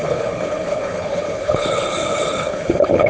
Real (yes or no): no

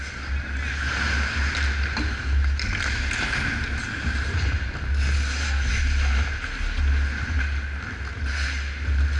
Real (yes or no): yes